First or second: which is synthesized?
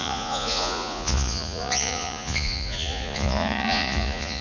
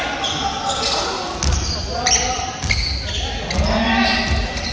first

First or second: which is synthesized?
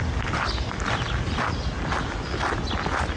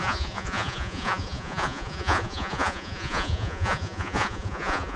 second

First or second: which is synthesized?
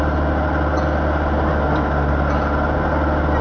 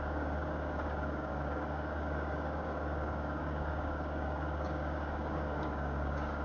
second